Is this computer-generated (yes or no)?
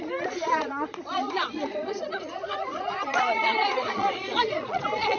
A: yes